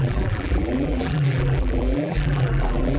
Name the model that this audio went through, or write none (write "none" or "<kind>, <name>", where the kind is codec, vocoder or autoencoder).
vocoder, BigVGAN v2